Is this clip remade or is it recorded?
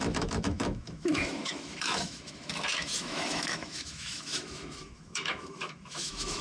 remade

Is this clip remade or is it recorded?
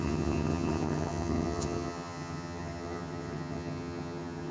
remade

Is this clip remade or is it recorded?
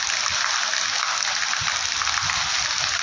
recorded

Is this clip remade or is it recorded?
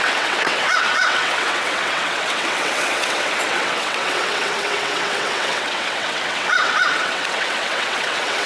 remade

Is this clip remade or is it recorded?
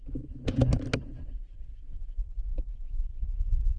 recorded